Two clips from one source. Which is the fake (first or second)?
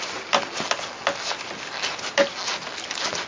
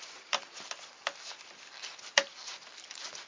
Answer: second